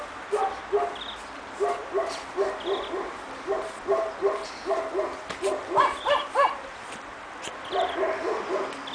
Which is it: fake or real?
real